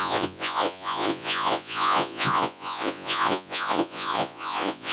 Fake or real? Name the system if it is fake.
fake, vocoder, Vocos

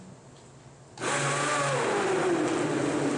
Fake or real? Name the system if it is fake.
real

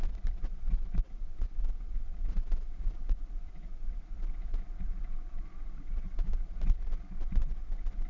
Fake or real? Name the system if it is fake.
fake, vocoder, Vocos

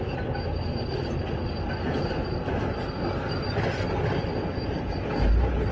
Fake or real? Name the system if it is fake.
real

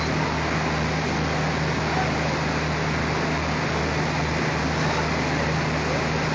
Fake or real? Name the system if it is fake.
real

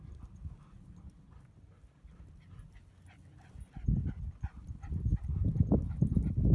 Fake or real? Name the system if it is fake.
real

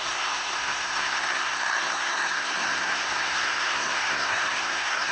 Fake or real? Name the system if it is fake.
fake, codec, SNAC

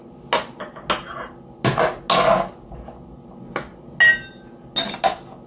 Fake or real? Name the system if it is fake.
real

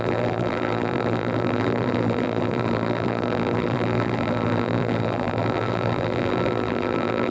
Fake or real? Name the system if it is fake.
fake, vocoder, BigVGAN v2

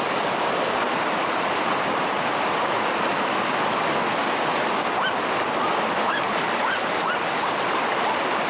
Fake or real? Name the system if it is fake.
real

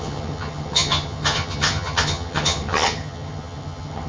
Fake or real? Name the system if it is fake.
fake, vocoder, HiFi-GAN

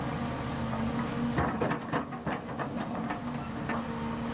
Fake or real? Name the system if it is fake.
real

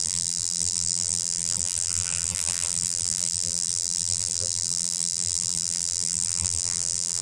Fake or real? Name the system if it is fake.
fake, vocoder, BigVGAN v2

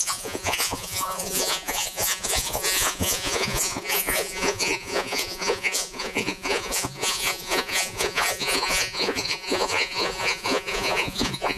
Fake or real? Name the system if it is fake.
fake, vocoder, Vocos